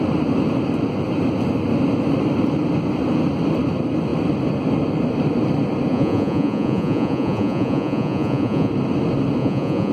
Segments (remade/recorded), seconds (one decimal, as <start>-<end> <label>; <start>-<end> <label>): 0.0-5.9 recorded; 5.9-8.7 remade; 8.7-9.4 recorded; 9.4-9.9 remade